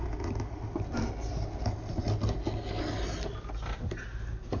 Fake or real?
real